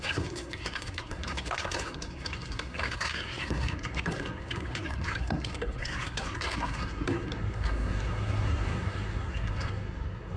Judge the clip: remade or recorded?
remade